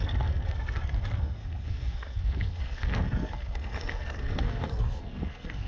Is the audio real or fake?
fake